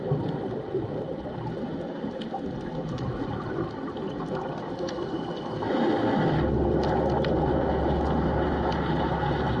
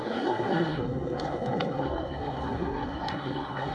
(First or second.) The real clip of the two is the first